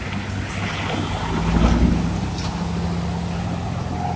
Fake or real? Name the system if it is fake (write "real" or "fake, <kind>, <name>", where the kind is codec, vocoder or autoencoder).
real